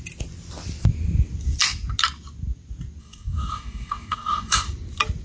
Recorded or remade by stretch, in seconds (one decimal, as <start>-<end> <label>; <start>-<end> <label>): 0.0-3.0 recorded; 3.0-4.7 remade; 4.7-5.2 recorded